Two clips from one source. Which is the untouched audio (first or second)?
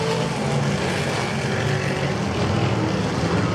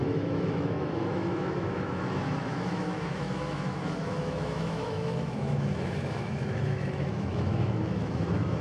first